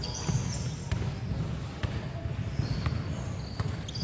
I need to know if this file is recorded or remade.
recorded